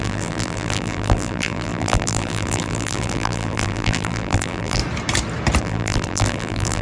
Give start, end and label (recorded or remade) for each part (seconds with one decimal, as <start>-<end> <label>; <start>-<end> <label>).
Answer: 0.0-4.8 remade; 4.8-5.6 recorded; 5.6-6.8 remade